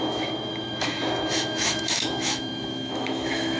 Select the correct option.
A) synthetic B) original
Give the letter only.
A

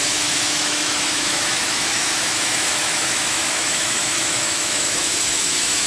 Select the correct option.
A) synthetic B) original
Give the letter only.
A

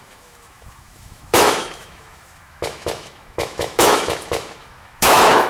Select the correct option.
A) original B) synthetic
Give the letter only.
B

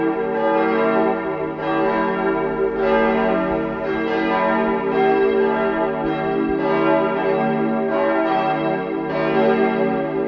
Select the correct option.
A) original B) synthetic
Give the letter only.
A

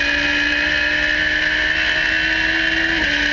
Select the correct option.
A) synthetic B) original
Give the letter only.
B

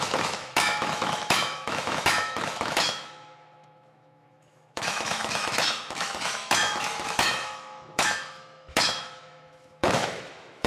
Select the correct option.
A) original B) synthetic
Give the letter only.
B